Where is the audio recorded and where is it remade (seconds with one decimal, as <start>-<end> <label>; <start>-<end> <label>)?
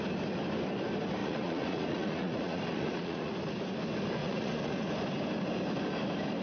0.0-1.2 recorded; 1.2-3.3 remade; 3.3-4.2 recorded; 4.2-4.8 remade; 4.8-6.4 recorded